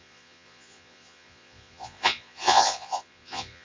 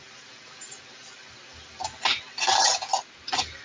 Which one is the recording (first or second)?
second